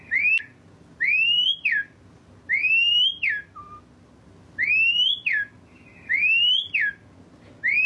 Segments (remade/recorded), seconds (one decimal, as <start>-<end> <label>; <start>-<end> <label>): 0.0-7.9 recorded